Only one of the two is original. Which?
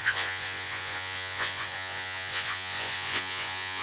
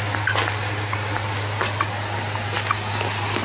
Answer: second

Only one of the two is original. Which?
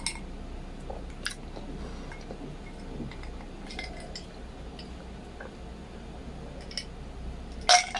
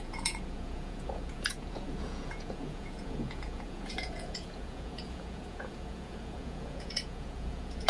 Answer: first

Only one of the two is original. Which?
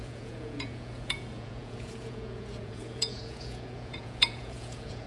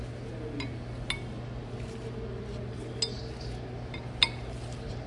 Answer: second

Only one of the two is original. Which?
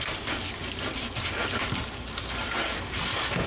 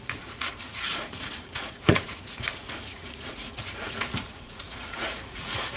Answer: first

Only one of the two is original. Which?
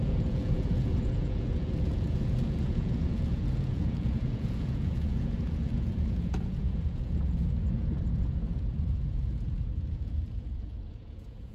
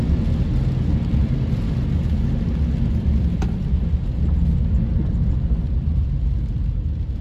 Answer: second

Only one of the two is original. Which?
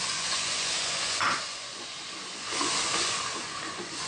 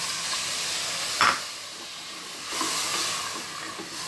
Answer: second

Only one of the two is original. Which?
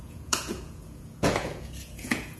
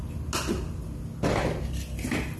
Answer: second